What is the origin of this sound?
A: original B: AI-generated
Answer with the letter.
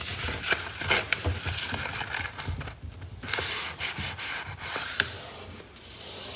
A